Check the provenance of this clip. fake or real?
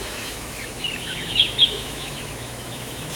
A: fake